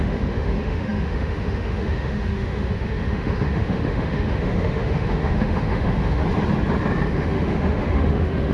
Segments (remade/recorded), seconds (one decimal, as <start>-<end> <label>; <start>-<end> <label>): 0.0-6.2 remade; 6.2-7.1 recorded; 7.1-8.5 remade